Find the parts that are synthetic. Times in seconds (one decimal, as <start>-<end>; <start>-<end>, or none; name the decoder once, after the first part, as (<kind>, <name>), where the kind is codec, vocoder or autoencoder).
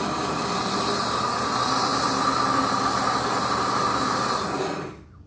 none